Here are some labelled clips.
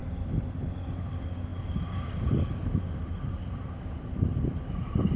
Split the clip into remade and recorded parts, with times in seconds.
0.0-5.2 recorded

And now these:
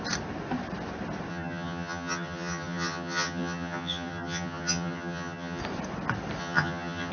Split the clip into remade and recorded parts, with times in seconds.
0.0-1.3 recorded; 1.3-5.6 remade; 5.6-6.4 recorded; 6.4-7.1 remade